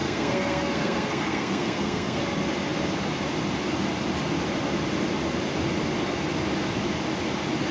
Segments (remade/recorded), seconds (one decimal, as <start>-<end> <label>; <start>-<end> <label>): 0.0-2.2 remade; 2.2-7.7 recorded